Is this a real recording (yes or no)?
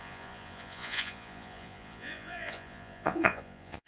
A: no